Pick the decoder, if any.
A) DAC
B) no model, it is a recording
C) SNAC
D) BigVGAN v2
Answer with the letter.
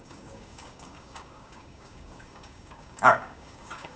A